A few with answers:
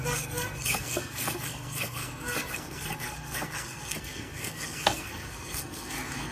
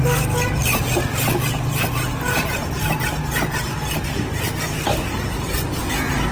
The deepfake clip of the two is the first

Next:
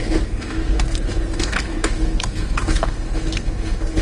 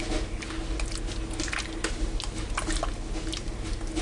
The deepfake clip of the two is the first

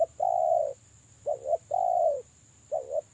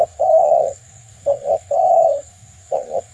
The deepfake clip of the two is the second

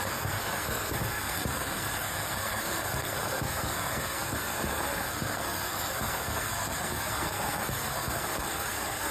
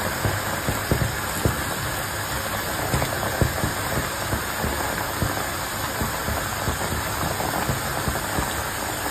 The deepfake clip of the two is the first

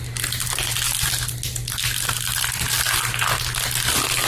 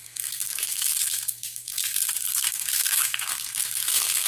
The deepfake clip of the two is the second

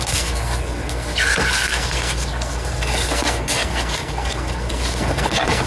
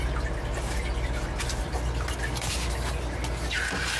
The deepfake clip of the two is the first